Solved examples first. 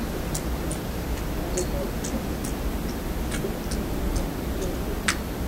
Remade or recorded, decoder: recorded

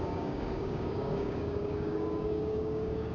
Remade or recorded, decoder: remade, codec, DAC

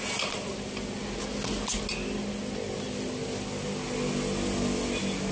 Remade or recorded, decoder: recorded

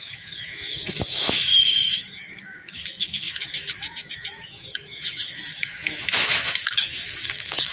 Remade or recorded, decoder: remade, autoencoder, DAC-VAE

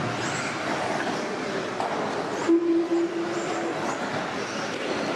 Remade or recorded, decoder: recorded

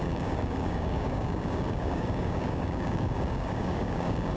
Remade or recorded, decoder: remade, codec, DAC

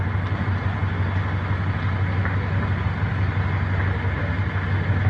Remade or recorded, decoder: recorded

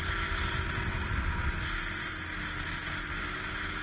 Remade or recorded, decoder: recorded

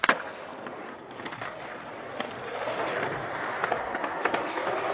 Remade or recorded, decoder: recorded